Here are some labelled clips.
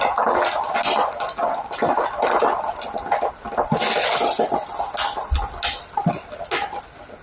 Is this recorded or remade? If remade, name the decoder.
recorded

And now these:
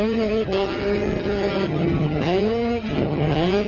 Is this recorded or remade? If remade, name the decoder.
remade, vocoder, HiFi-GAN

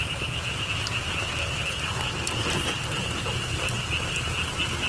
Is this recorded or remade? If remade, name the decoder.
recorded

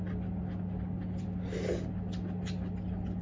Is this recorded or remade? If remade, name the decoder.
recorded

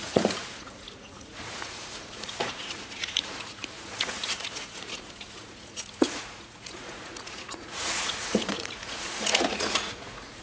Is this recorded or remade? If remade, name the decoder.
remade, vocoder, Vocos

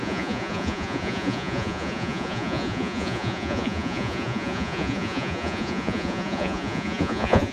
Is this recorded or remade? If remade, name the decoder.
remade, vocoder, Vocos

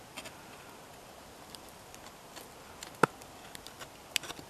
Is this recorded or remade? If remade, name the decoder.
recorded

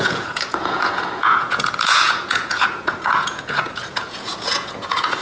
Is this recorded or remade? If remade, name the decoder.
remade, vocoder, Vocos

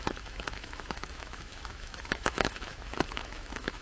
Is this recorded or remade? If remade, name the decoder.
remade, autoencoder, DAC-VAE